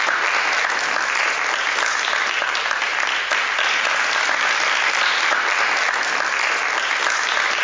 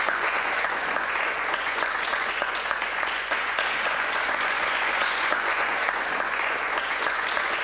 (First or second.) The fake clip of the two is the second